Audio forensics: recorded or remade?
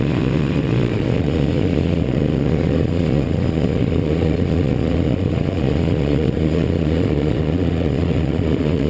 remade